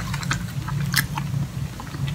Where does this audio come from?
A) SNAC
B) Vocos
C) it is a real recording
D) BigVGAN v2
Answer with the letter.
C